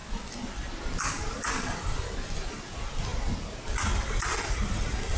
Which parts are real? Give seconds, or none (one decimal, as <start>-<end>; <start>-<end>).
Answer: 0.0-5.2